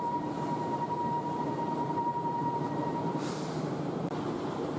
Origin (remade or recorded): remade